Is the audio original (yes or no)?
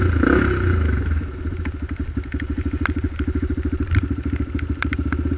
yes